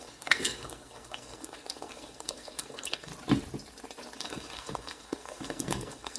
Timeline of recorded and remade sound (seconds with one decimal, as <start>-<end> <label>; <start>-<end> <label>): 0.0-3.1 remade; 3.1-4.2 recorded; 4.2-6.2 remade